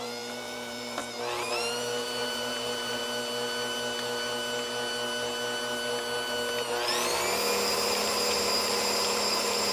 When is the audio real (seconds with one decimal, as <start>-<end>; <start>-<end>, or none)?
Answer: 1.0-1.5; 3.0-7.7